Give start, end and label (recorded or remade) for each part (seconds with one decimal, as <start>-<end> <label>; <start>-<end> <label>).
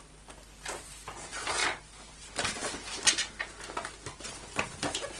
0.0-5.2 recorded